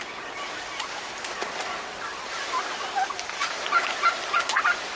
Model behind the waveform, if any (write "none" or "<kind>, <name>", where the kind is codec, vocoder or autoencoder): vocoder, BigVGAN v2